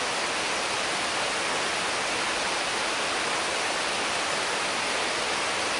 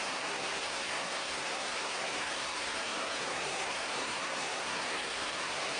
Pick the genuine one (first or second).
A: first